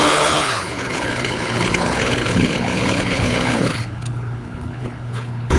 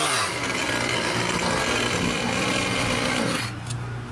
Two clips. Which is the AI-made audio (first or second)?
first